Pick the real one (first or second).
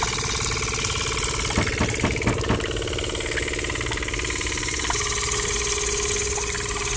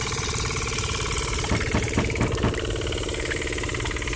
first